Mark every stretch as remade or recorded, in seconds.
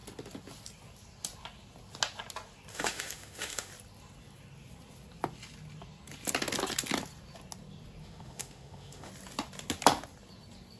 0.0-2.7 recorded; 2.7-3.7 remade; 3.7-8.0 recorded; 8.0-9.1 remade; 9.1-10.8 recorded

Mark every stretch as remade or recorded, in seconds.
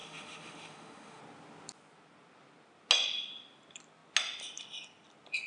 0.0-1.2 remade; 1.2-5.5 recorded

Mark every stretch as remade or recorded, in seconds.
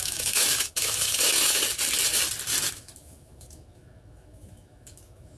0.0-1.6 remade; 1.6-2.7 recorded; 2.7-5.4 remade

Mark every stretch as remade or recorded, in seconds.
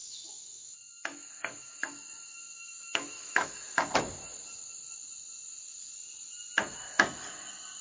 0.0-3.8 remade; 3.8-7.8 recorded